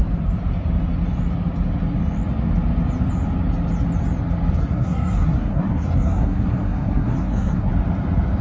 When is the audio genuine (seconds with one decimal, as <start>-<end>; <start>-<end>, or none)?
0.0-4.6; 7.7-8.4